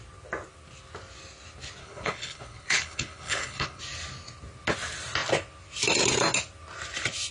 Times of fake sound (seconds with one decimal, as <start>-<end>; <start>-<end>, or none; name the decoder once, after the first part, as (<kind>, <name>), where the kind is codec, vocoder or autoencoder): 1.8-3.8 (codec, HILCodec)